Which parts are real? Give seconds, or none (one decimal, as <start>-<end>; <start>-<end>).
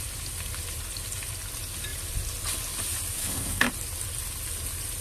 0.0-3.2; 3.7-5.0